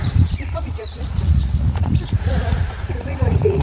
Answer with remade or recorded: remade